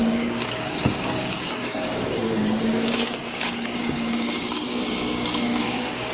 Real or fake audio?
fake